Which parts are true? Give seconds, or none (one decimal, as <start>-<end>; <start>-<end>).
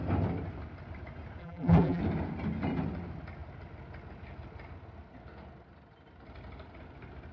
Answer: 0.0-1.4; 2.0-7.3